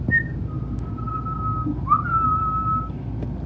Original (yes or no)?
yes